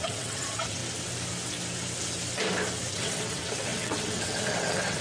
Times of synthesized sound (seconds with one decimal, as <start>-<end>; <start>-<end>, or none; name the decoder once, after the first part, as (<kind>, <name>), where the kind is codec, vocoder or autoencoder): 0.0-0.8 (vocoder, WaveNeXt); 2.9-5.0